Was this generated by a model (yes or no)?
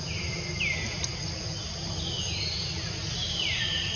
no